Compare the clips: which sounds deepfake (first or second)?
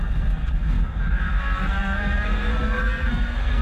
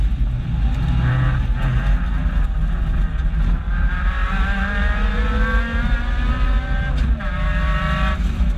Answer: first